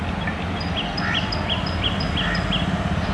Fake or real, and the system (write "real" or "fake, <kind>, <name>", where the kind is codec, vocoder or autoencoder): real